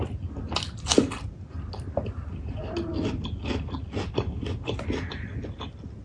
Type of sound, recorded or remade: recorded